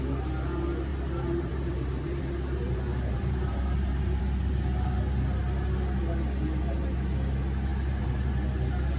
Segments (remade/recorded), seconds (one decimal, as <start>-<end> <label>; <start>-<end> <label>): 0.0-0.9 recorded; 0.9-4.2 remade; 4.2-7.7 recorded; 7.7-8.3 remade; 8.3-9.0 recorded